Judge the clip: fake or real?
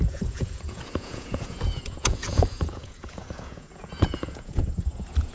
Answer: fake